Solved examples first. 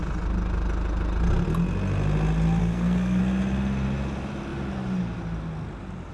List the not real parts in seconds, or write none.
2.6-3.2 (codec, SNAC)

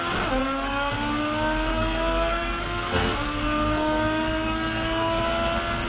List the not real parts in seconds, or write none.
0.4-0.9 (codec, SNAC); 1.7-5.2